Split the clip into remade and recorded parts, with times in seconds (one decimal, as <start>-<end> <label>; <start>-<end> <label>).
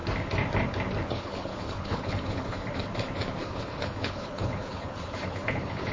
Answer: 0.0-1.1 recorded; 1.1-2.6 remade; 2.6-3.4 recorded; 3.4-5.9 remade